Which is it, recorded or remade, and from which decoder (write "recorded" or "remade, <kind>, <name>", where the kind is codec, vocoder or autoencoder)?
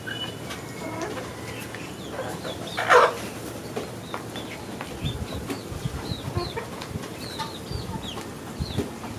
recorded